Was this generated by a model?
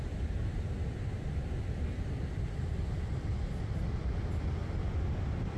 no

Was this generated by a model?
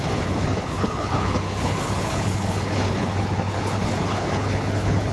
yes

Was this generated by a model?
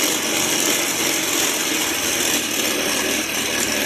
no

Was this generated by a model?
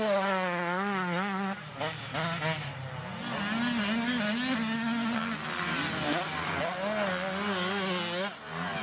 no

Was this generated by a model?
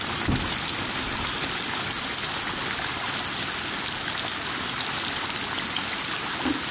no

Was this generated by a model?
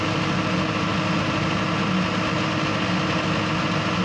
no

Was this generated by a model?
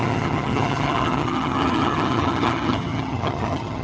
yes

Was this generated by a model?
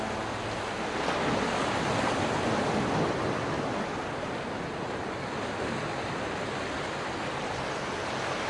no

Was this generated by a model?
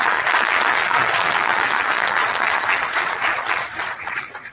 yes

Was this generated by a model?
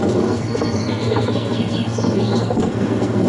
yes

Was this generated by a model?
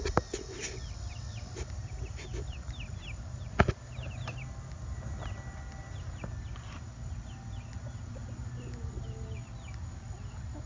no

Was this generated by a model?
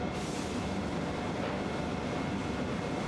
no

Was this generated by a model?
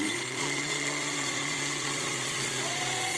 yes